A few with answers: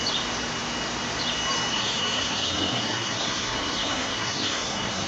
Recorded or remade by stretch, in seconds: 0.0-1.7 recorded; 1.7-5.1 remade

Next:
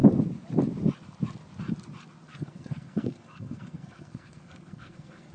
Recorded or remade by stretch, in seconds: 0.0-2.3 recorded; 2.3-5.3 remade

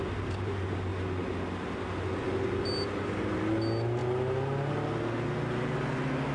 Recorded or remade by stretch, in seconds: 0.0-6.3 recorded

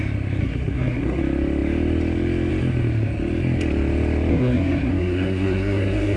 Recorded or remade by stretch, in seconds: 0.0-0.4 recorded; 0.4-1.2 remade; 1.2-4.3 recorded; 4.3-6.2 remade

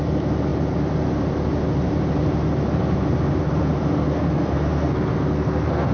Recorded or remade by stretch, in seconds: 0.0-4.0 recorded; 4.0-5.9 remade

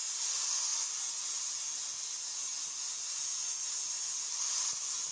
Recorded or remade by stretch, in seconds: 0.0-5.1 recorded

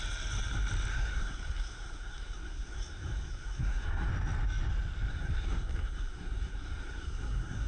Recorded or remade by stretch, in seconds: 0.0-0.9 recorded; 0.9-4.1 remade; 4.1-5.1 recorded; 5.1-7.7 remade